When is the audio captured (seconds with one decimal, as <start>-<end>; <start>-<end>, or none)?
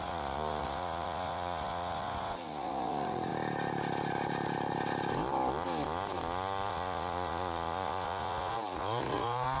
3.3-6.7